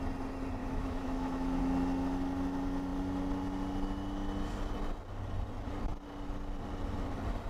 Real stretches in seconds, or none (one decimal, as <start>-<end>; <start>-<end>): 0.0-0.6; 1.6-7.5